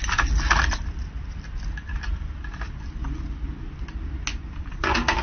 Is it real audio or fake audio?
real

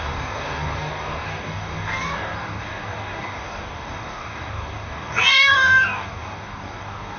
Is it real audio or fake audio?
fake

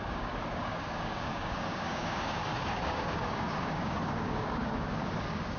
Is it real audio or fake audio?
fake